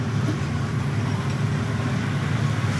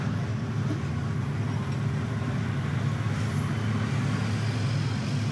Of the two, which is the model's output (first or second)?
first